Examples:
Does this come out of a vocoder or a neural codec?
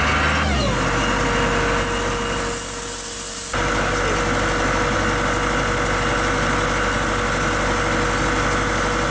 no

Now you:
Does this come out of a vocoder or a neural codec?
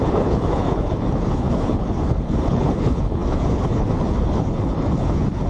yes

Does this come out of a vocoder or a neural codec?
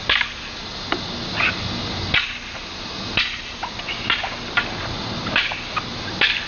no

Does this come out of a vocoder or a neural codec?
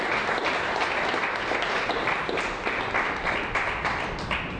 no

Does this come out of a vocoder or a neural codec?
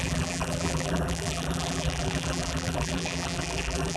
yes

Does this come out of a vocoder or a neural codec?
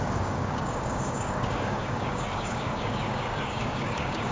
yes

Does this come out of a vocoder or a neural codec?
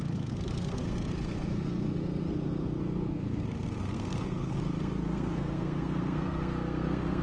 yes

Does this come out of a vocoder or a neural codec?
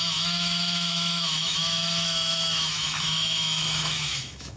yes